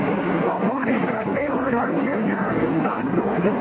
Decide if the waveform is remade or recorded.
remade